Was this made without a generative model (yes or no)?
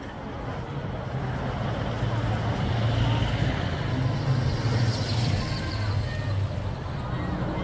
yes